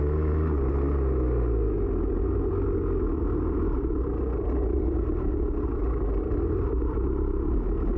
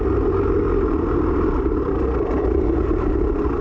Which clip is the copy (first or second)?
second